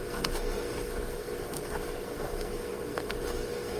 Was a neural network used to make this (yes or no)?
yes